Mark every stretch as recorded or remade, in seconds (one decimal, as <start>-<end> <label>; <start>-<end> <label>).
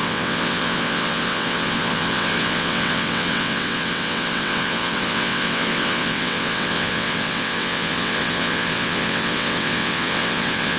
0.0-10.8 remade